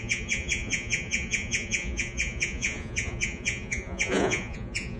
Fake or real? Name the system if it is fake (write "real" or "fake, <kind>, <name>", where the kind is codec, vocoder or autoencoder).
fake, vocoder, Vocos